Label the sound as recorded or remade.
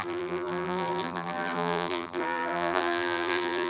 remade